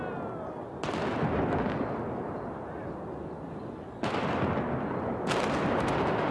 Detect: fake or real real